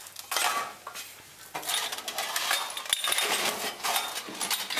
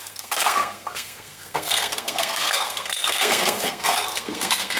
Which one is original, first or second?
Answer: first